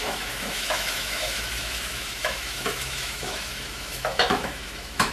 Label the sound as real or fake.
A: fake